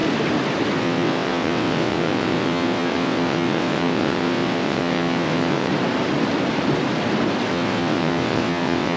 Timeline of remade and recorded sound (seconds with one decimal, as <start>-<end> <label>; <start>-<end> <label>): 0.0-0.8 recorded; 0.8-5.7 remade; 5.7-7.5 recorded; 7.5-9.0 remade